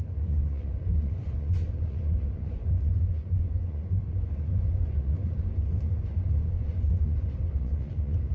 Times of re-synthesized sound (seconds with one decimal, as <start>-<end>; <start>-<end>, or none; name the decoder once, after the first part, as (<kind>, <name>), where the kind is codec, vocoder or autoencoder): 0.0-8.3 (vocoder, Vocos)